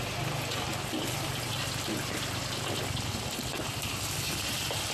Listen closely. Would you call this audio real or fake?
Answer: real